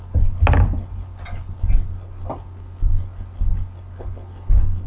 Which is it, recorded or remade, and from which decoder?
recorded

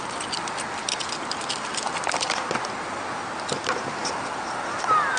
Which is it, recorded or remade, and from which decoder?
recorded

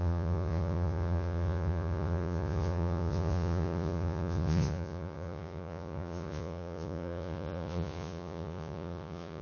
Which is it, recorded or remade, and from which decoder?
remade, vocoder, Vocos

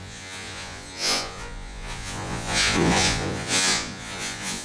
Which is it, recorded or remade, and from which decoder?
remade, vocoder, Vocos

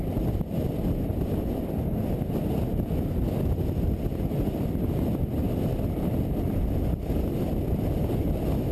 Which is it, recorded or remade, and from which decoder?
recorded